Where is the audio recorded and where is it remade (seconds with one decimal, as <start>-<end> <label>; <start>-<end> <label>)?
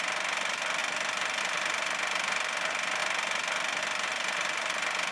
0.0-3.0 remade; 3.0-3.8 recorded; 3.8-5.1 remade